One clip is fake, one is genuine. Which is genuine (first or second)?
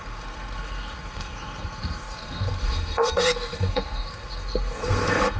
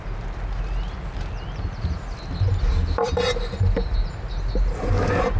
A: second